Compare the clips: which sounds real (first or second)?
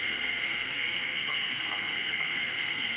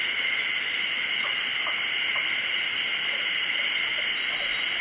second